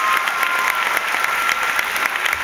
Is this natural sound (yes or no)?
yes